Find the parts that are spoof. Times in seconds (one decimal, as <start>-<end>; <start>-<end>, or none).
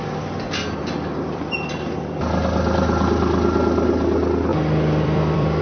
0.0-2.2; 4.5-5.6